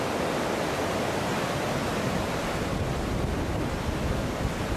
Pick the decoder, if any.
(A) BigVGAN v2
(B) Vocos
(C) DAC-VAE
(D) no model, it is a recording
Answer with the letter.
D